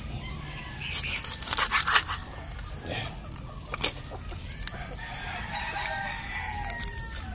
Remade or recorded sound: recorded